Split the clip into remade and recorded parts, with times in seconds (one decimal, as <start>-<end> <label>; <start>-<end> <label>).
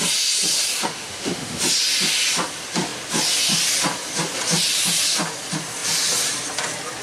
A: 0.0-0.9 recorded; 0.9-1.6 remade; 1.6-7.0 recorded